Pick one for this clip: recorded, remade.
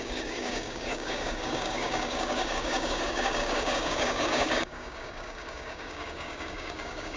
remade